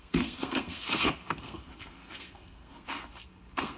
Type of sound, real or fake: fake